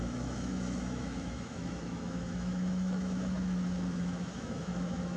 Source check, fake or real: fake